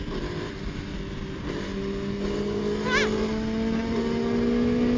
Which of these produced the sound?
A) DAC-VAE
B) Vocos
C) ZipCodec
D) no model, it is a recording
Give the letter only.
D